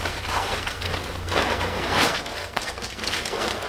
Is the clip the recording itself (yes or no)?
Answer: no